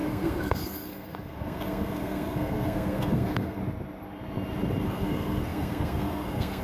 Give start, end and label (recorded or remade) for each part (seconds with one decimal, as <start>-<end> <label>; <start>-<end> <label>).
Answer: 0.0-3.6 remade; 3.6-4.9 recorded; 4.9-6.6 remade